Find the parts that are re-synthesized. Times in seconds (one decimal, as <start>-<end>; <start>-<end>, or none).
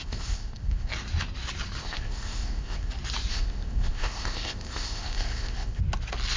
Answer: 0.0-0.9; 1.8-2.9; 3.3-5.8